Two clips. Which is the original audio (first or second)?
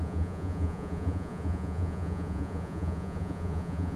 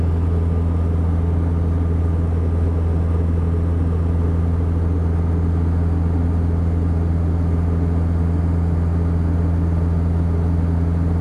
second